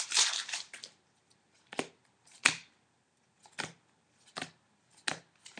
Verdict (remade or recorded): recorded